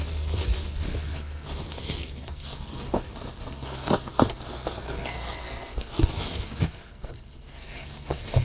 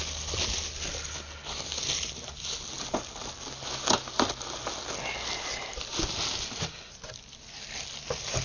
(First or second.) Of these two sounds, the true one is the second